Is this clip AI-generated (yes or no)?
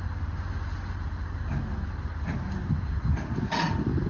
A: no